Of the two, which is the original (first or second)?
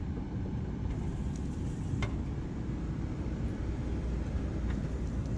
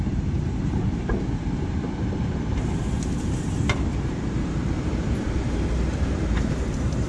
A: first